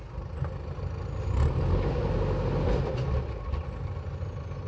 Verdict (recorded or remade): recorded